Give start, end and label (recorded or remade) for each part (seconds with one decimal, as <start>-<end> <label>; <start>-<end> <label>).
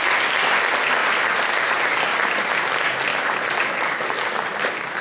0.0-5.0 recorded